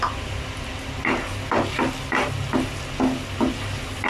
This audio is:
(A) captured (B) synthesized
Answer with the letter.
A